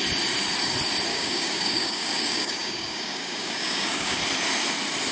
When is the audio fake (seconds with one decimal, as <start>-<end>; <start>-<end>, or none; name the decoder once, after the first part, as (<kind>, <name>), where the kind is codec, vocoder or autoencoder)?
1.1-4.2 (codec, DAC)